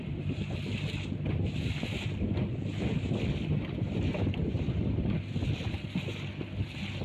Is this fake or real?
real